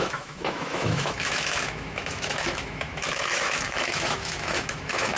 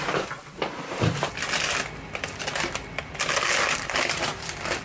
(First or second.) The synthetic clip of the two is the first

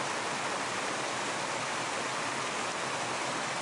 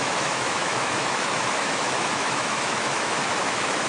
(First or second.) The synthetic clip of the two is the second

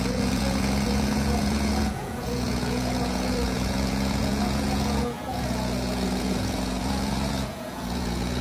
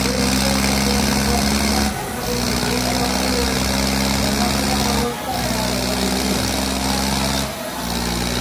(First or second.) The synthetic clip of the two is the first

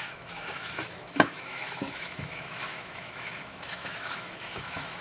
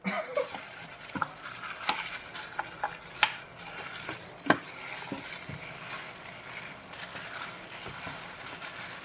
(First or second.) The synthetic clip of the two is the first